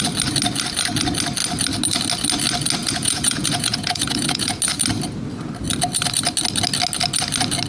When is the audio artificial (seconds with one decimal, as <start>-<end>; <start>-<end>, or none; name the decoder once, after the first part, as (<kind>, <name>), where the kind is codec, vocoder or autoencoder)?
2.8-4.6 (vocoder, Vocos)